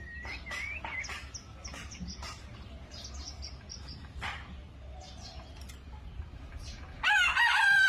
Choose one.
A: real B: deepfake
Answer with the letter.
A